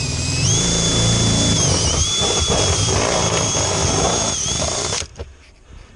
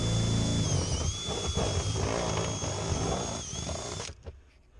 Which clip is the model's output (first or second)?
first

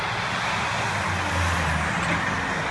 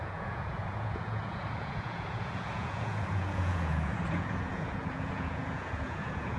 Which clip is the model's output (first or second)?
second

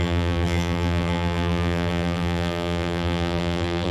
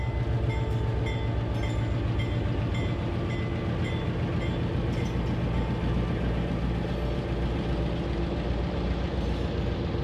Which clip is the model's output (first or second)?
first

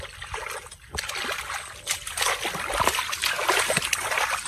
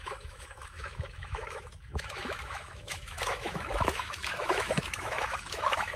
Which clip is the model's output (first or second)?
second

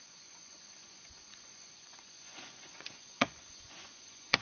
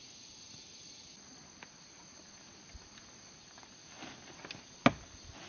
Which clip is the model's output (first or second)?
first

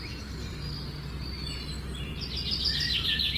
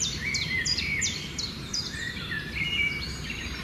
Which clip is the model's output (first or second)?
second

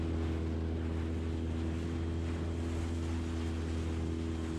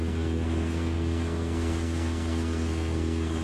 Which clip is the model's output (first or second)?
second